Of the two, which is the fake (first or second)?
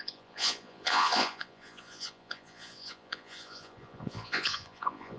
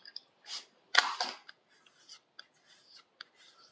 first